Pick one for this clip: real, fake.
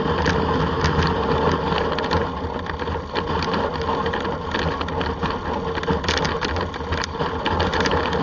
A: real